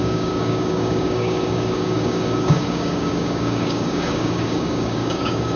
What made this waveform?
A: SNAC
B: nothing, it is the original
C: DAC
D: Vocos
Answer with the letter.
C